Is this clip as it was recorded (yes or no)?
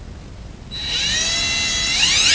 yes